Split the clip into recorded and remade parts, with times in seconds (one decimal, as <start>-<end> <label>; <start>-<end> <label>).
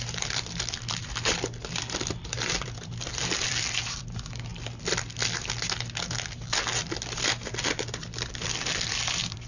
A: 0.0-4.5 remade; 4.5-7.6 recorded; 7.6-9.5 remade